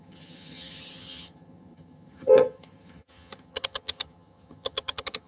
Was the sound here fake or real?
fake